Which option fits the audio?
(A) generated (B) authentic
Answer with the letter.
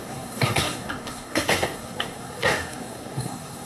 A